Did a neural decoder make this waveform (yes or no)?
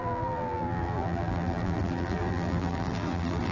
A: yes